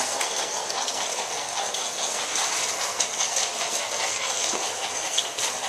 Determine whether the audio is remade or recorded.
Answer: remade